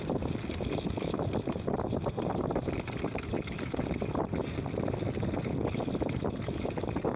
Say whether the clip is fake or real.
fake